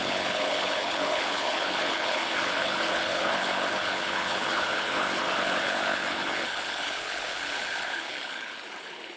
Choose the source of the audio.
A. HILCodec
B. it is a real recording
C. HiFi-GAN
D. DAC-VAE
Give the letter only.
A